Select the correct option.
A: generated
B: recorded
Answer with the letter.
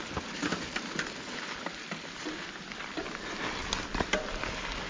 B